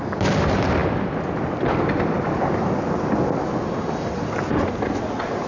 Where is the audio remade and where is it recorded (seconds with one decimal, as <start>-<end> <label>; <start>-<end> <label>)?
0.0-5.5 recorded